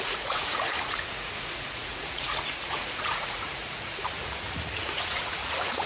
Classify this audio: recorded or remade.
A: remade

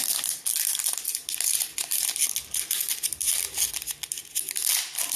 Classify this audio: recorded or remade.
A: recorded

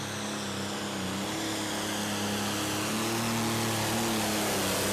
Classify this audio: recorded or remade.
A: recorded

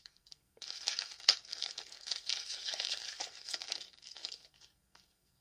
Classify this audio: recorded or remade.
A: remade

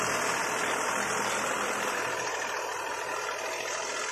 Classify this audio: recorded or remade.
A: recorded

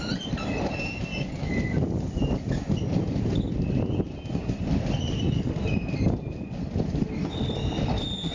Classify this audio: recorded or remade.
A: recorded